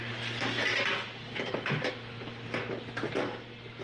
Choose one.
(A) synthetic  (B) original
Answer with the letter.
B